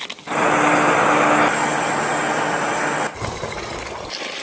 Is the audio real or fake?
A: real